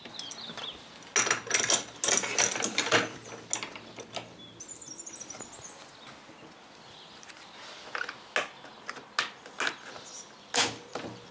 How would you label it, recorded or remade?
recorded